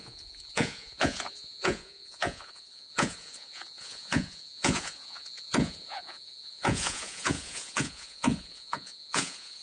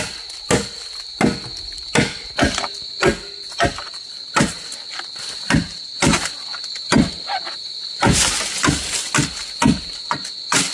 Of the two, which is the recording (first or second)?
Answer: second